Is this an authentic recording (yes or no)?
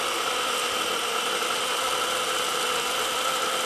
yes